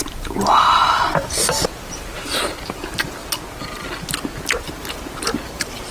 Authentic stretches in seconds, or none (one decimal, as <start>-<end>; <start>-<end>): 3.2-4.6